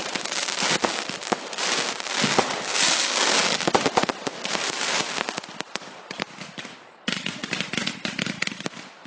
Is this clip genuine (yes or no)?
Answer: yes